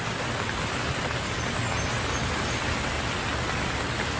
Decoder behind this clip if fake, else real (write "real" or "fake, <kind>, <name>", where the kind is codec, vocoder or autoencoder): real